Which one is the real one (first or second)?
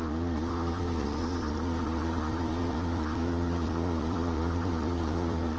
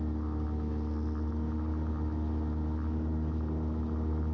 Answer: second